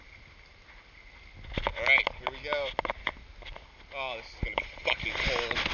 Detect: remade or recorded recorded